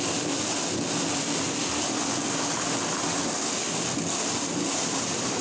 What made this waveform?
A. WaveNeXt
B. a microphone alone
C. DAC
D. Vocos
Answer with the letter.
B